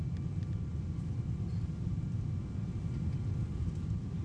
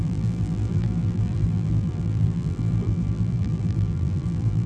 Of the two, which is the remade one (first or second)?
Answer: second